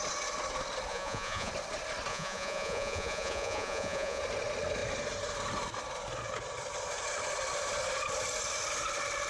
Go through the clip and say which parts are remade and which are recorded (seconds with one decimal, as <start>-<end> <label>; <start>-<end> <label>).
0.0-0.9 recorded; 0.9-1.5 remade; 1.5-2.1 recorded; 2.1-4.2 remade; 4.2-9.3 recorded